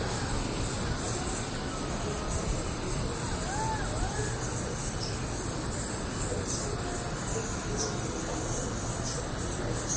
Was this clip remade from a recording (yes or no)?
no